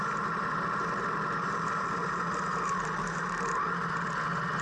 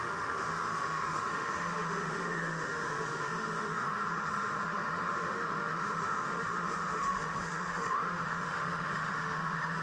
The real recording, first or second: first